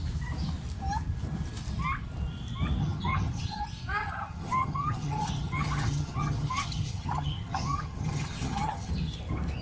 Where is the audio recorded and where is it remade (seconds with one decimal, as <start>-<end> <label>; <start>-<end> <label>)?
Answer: 0.0-2.8 recorded; 2.8-3.6 remade; 3.6-4.0 recorded; 4.0-8.9 remade; 8.9-9.6 recorded